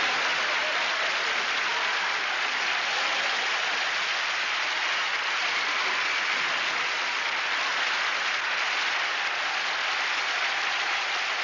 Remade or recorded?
recorded